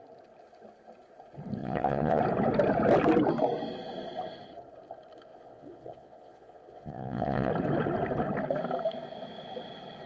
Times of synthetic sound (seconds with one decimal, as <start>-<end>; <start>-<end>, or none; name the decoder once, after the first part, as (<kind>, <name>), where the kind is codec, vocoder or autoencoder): 1.6-2.2 (vocoder, Vocos); 5.3-7.5